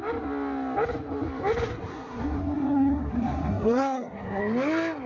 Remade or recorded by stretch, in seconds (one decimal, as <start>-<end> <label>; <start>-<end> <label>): 0.0-1.7 recorded; 1.7-4.4 remade; 4.4-5.1 recorded